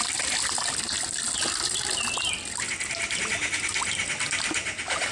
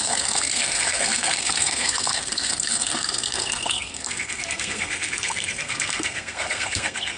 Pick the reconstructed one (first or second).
second